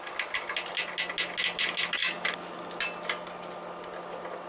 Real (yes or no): yes